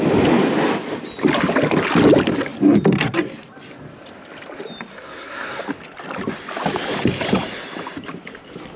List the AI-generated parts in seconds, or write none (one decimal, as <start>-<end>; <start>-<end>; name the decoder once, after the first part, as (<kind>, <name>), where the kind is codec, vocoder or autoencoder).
4.9-5.6 (codec, SNAC)